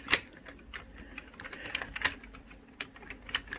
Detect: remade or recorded recorded